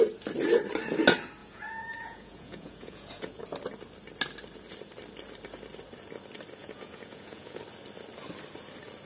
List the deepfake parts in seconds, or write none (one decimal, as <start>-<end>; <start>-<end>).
1.4-3.4; 6.6-7.6